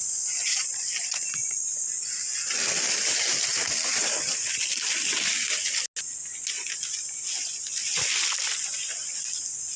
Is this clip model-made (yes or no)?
no